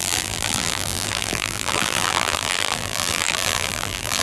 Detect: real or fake fake